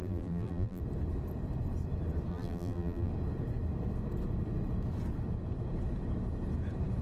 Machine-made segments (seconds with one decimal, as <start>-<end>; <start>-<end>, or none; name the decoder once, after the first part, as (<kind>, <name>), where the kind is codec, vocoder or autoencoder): 0.0-0.8 (vocoder, BigVGAN v2); 2.3-3.1